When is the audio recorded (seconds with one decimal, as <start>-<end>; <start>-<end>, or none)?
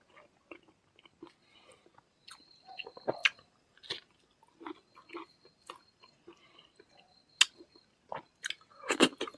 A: 0.0-9.4